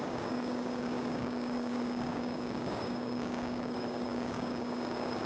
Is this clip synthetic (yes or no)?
yes